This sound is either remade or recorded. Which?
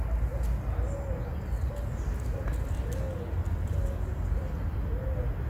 recorded